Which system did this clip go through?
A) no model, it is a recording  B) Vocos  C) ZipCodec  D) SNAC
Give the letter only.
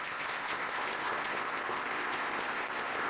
C